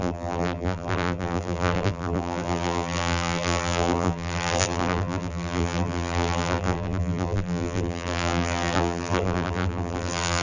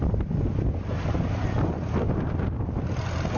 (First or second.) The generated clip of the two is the first